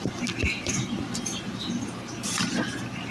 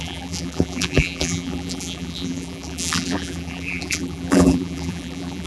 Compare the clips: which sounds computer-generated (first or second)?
second